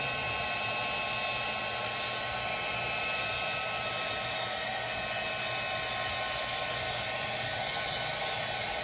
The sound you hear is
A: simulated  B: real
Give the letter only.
B